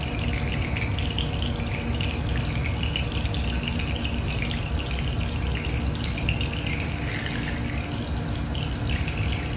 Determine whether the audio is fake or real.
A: real